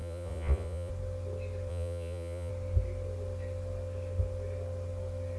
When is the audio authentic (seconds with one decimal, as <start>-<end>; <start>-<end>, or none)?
0.9-1.7; 2.5-5.4